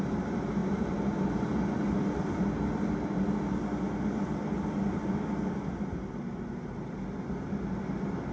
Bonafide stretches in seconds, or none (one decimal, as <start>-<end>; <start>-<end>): 0.0-0.6; 2.5-8.3